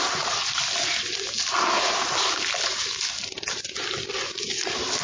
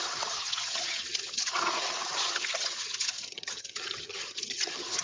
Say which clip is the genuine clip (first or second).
first